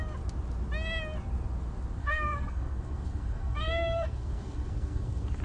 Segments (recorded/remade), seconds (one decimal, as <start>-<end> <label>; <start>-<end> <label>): 0.0-2.0 recorded; 2.0-5.4 remade

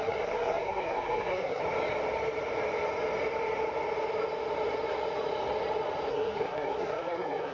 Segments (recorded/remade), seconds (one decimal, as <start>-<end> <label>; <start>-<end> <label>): 0.0-1.6 remade; 1.6-6.1 recorded; 6.1-7.5 remade

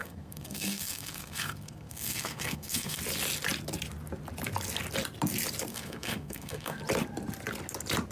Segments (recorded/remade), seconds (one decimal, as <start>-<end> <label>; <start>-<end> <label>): 0.0-3.0 remade; 3.0-5.7 recorded; 5.7-6.8 remade; 6.8-8.1 recorded

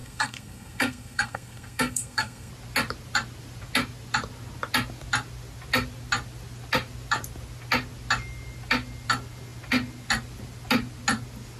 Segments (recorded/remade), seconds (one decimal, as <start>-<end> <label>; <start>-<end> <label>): 0.0-2.5 remade; 2.5-11.6 recorded

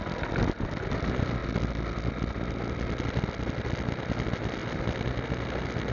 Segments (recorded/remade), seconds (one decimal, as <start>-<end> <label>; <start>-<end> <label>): 0.0-5.9 recorded